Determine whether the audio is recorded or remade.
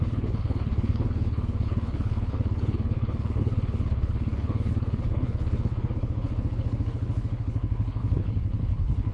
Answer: remade